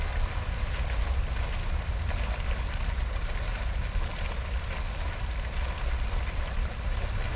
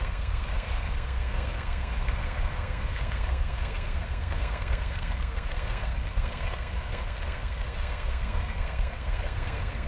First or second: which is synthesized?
second